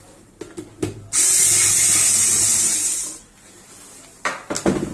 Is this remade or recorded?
recorded